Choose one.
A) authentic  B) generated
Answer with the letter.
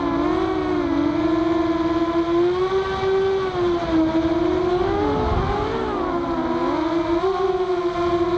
A